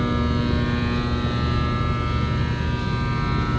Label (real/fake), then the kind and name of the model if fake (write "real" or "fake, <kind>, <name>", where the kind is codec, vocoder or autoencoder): real